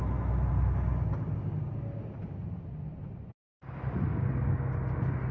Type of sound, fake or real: real